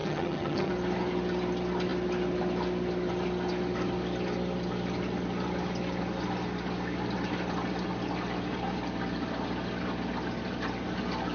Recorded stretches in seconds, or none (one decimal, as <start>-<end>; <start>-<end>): 0.7-11.3

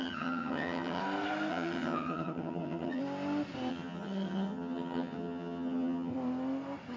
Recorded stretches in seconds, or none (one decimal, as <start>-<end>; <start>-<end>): 1.0-1.5; 3.0-3.7; 6.1-7.0

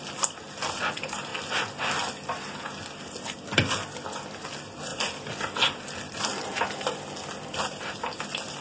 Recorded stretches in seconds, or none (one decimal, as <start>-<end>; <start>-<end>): 0.0-8.6

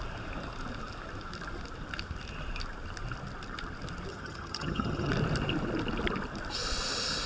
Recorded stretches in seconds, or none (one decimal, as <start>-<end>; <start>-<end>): 0.0-4.1; 5.1-7.3

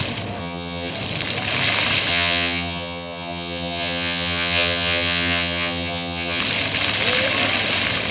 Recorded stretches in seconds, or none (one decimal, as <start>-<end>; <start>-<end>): 0.0-0.4; 0.9-2.1; 6.4-8.1

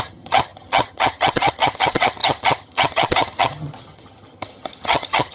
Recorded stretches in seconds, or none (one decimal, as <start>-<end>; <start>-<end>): none

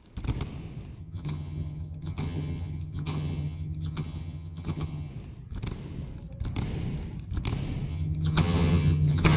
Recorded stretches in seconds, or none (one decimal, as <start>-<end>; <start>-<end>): 0.0-1.0; 5.1-7.9